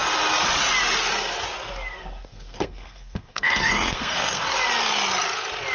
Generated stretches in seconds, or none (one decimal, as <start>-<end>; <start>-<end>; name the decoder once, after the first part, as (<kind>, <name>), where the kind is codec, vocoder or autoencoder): 2.0-4.4 (codec, SNAC)